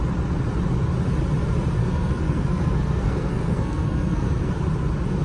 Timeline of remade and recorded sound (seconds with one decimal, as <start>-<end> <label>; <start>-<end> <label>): 0.0-1.8 recorded; 1.8-4.5 remade; 4.5-5.2 recorded